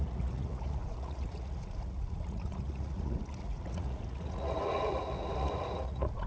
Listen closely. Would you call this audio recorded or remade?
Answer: remade